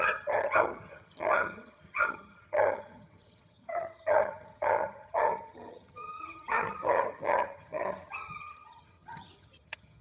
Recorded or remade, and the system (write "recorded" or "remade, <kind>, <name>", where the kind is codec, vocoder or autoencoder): remade, vocoder, HiFi-GAN